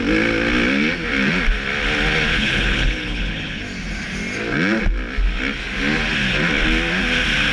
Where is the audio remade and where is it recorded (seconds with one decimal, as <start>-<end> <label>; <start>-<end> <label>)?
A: 0.0-2.3 recorded; 2.3-3.6 remade; 3.6-7.5 recorded